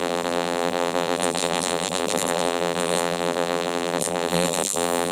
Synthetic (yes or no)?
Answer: yes